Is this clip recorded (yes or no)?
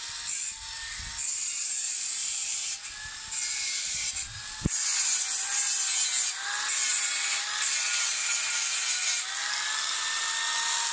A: yes